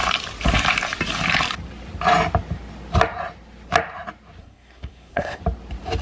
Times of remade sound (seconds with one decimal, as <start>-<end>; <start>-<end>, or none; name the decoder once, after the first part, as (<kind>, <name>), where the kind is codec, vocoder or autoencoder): 4.4-5.4 (codec, SNAC)